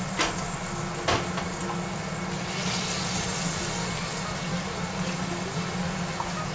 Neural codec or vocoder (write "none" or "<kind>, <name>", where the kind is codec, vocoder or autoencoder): none